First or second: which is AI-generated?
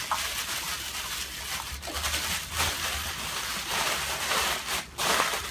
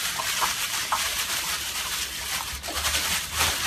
second